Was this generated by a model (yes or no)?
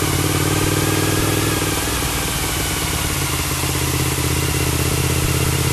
no